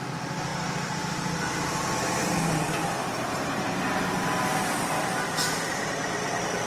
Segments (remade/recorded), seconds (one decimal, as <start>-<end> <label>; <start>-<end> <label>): 0.0-0.5 recorded; 0.5-1.8 remade; 1.8-2.8 recorded; 2.8-6.7 remade